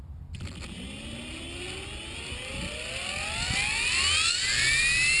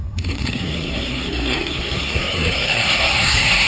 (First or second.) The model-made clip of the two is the second